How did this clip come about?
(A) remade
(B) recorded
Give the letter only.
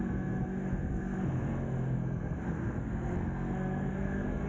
A